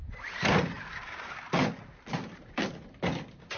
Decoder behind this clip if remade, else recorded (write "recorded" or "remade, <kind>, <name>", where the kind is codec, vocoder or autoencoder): recorded